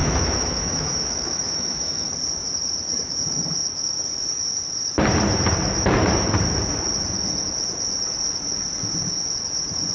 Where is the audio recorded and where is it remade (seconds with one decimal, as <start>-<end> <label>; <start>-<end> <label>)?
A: 0.0-2.1 remade; 2.1-9.9 recorded